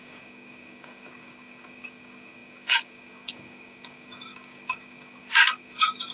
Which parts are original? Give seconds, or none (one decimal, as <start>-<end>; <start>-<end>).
none